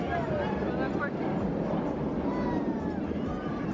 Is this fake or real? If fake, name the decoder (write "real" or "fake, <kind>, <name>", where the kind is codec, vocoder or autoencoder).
real